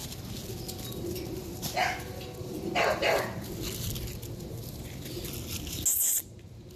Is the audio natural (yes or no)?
yes